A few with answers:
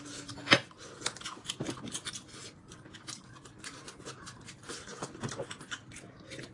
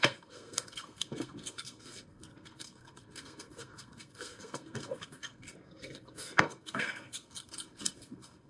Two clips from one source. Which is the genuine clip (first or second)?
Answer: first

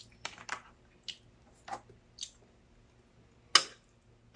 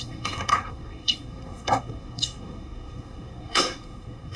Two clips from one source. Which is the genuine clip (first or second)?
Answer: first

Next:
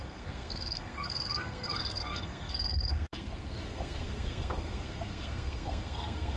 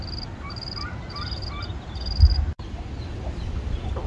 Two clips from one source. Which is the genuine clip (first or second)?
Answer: second